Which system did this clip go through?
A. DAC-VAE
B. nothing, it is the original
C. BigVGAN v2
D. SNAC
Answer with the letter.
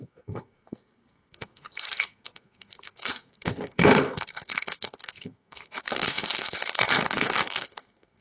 D